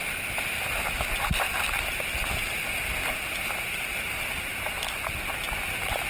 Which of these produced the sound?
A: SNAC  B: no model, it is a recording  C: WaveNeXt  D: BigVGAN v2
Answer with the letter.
B